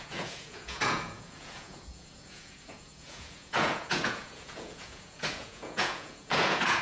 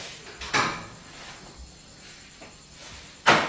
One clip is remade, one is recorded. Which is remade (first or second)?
first